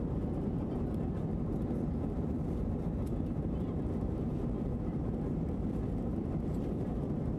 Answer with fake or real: fake